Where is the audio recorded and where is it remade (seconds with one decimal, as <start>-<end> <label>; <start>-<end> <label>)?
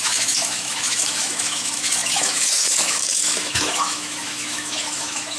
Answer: 0.0-5.4 remade